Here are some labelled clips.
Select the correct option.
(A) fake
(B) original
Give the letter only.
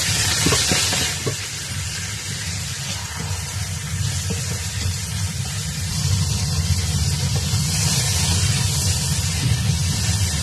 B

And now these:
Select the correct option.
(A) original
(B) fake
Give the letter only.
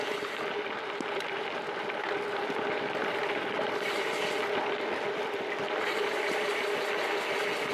A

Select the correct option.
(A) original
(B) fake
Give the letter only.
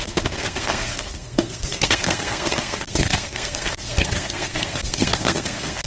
B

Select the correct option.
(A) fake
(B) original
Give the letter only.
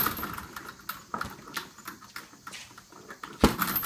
B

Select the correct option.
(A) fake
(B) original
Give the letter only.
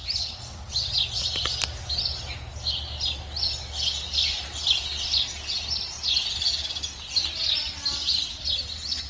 B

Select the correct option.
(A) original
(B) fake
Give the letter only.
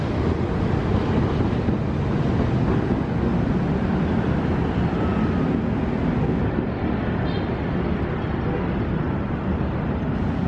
A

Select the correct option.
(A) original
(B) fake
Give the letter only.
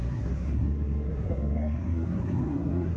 B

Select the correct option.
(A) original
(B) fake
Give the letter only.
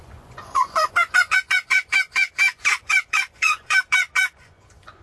B